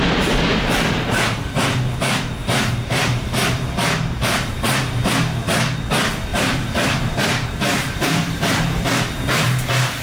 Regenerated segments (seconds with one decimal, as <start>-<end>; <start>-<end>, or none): 2.4-5.0; 6.3-10.0